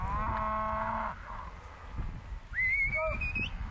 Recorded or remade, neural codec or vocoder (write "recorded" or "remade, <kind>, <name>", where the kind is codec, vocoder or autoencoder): recorded